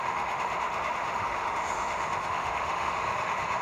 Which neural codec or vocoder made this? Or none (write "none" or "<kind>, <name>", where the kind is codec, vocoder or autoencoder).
autoencoder, DAC-VAE